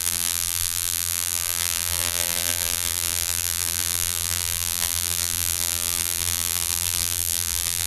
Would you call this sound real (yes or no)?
no